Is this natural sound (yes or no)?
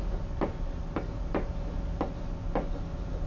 yes